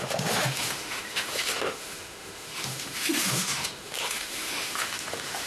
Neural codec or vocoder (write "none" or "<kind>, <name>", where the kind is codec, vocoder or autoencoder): autoencoder, DAC-VAE